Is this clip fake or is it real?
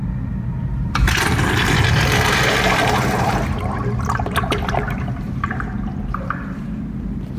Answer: fake